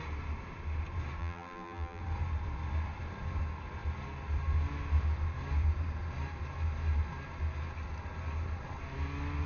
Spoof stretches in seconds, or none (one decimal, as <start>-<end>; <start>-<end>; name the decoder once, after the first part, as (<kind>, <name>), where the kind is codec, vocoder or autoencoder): 1.2-2.0 (vocoder, BigVGAN v2)